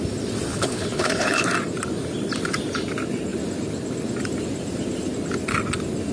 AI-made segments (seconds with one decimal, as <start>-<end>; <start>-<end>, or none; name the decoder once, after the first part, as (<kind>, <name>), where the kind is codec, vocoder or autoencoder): 0.5-1.5 (codec, HILCodec)